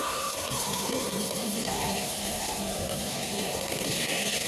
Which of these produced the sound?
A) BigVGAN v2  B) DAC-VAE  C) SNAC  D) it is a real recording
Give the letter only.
C